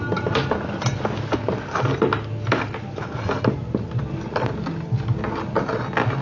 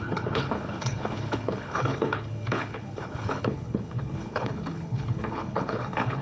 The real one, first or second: first